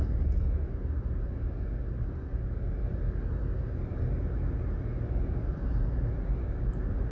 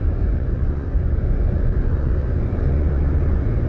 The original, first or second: first